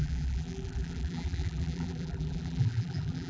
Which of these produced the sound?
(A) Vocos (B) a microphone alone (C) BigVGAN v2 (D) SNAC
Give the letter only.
C